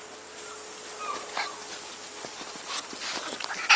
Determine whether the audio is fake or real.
real